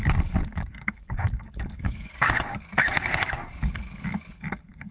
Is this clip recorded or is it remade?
remade